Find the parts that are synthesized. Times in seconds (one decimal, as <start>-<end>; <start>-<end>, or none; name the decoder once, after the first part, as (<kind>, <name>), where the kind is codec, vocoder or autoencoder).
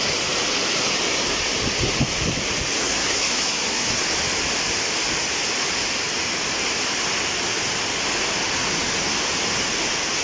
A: 2.8-4.0 (codec, SNAC)